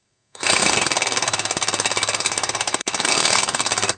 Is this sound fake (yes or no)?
yes